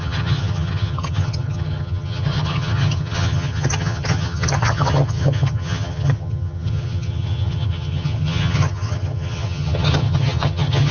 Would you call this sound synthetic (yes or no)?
yes